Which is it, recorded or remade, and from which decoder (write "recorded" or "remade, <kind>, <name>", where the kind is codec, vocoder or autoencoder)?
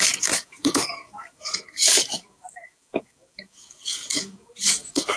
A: remade, codec, DAC